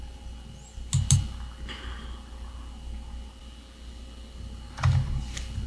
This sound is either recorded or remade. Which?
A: recorded